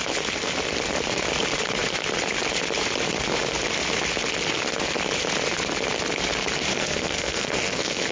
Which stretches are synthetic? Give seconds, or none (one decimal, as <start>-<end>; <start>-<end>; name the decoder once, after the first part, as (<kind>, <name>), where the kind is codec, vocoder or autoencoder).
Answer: 6.7-8.1 (codec, SNAC)